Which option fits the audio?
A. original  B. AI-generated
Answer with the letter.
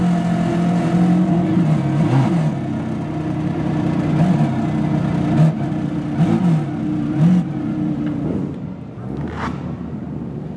A